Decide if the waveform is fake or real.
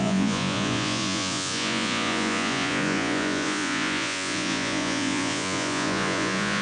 fake